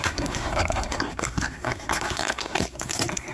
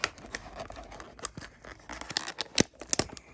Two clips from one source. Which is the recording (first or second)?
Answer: second